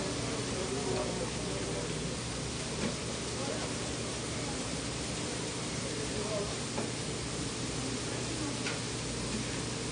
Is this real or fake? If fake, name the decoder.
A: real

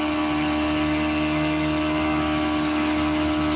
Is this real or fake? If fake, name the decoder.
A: real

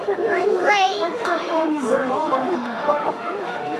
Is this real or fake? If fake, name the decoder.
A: fake, autoencoder, DAC-VAE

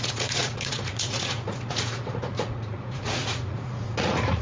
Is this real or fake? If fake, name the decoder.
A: fake, vocoder, Vocos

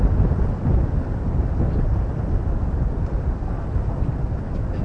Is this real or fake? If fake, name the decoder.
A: real